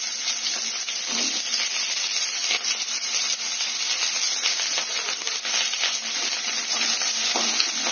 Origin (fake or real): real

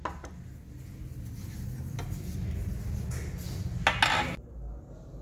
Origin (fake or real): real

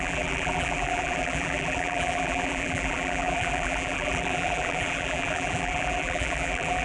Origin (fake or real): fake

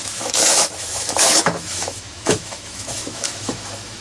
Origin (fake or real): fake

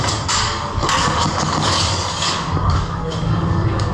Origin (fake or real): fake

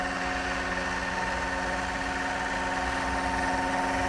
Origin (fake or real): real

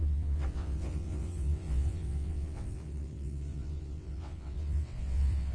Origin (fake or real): fake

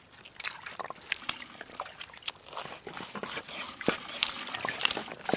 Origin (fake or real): real